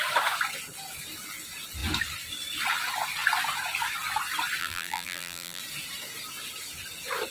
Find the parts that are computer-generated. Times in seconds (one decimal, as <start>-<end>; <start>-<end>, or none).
4.6-5.6